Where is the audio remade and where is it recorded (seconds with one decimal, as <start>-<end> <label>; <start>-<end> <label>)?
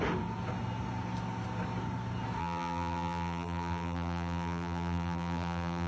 0.0-2.4 recorded; 2.4-5.9 remade